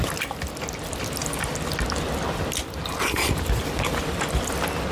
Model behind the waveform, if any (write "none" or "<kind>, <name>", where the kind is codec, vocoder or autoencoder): none